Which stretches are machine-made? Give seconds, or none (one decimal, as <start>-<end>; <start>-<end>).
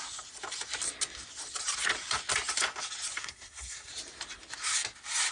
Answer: 3.2-3.9